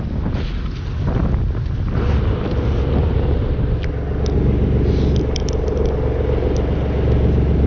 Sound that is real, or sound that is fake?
real